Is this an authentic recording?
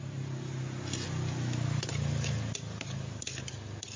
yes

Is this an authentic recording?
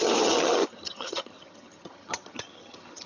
no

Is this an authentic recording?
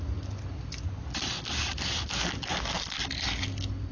yes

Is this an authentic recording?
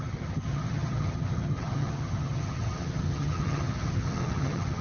no